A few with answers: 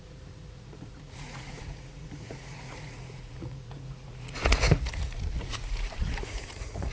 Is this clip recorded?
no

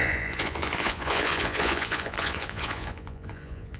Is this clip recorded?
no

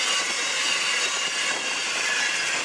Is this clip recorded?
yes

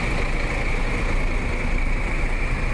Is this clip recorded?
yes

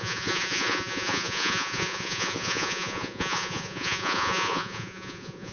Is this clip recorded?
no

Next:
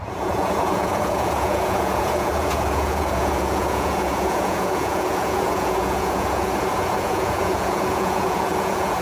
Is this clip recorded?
no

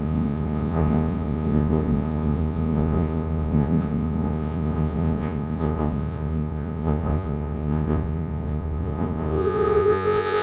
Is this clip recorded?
no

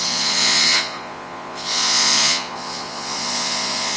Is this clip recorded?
no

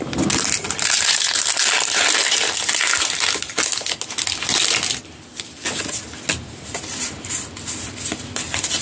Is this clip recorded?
yes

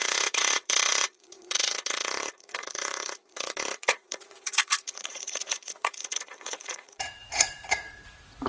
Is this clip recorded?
no